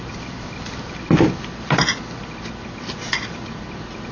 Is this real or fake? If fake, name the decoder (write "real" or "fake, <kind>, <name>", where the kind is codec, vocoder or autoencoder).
fake, vocoder, BigVGAN v2